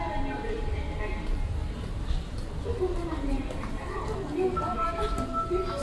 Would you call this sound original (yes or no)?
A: no